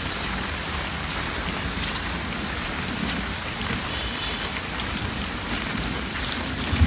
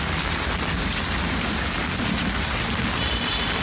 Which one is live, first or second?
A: second